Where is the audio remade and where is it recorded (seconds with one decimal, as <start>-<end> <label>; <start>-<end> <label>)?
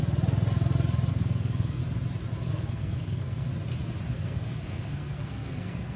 0.0-1.1 recorded; 1.1-1.8 remade; 1.8-2.5 recorded; 2.5-3.5 remade; 3.5-4.1 recorded; 4.1-6.0 remade